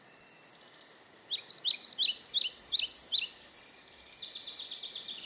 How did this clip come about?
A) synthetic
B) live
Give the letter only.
B